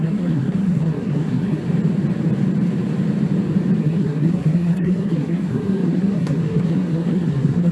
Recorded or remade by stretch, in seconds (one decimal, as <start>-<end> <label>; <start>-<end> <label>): 0.0-1.6 remade; 1.6-3.8 recorded; 3.8-7.7 remade